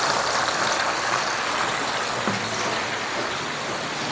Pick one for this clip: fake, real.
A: real